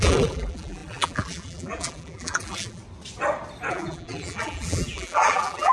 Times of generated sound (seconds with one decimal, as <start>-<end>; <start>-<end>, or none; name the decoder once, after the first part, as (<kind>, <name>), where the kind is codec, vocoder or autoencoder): 0.0-2.8 (vocoder, BigVGAN v2); 3.7-5.7